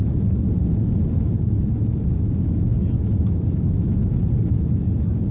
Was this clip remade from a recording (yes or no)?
no